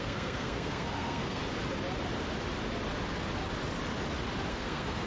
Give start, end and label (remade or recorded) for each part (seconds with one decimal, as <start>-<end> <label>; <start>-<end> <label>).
0.0-1.4 remade; 1.4-4.5 recorded; 4.5-5.1 remade